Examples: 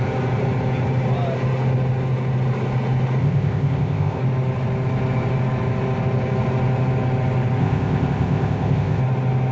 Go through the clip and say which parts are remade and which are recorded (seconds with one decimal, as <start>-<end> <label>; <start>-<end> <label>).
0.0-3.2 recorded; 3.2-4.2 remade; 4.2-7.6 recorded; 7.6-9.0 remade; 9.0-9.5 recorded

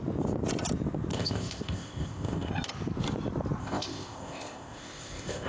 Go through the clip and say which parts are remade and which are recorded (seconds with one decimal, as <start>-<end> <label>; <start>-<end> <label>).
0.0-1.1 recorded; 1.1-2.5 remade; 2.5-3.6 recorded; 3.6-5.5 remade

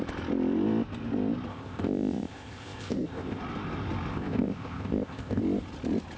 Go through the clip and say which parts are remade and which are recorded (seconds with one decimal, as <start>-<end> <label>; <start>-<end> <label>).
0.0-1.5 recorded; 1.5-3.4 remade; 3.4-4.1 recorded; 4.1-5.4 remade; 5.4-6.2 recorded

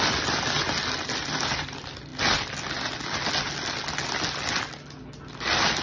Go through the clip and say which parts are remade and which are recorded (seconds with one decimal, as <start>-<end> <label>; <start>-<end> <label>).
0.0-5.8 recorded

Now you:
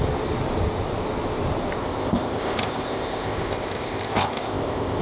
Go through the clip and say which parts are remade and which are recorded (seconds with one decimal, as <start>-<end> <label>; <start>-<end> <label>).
0.0-1.8 recorded; 1.8-5.0 remade

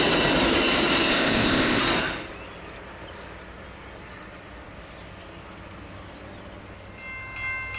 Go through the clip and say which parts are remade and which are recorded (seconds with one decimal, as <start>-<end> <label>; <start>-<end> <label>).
0.0-1.1 recorded; 1.1-1.8 remade; 1.8-7.8 recorded

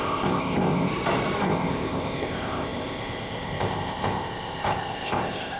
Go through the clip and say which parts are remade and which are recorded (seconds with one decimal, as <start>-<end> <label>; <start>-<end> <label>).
0.0-0.9 remade; 0.9-1.4 recorded; 1.4-5.6 remade